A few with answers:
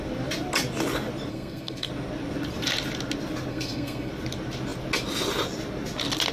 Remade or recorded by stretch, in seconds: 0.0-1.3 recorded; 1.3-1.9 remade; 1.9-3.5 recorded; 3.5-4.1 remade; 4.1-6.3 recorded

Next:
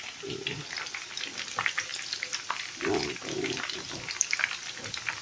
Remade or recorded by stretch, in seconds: 0.0-5.2 recorded

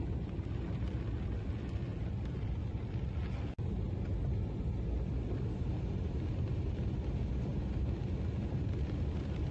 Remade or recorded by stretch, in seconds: 0.0-9.5 recorded